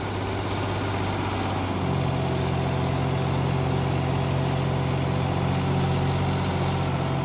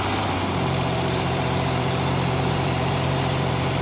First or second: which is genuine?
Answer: first